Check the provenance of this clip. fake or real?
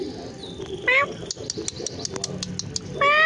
real